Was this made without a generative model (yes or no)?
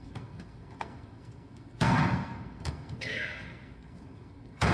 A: no